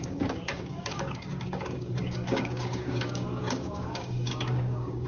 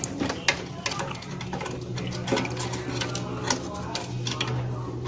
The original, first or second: second